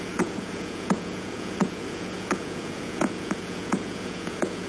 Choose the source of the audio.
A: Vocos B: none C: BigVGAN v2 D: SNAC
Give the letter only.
A